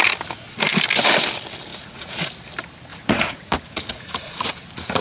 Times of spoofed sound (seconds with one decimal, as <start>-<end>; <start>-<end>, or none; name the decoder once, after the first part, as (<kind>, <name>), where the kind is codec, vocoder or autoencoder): 1.7-2.3 (vocoder, Vocos); 2.9-4.5